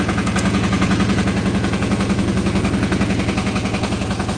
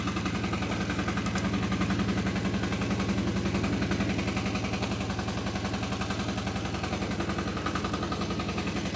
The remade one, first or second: first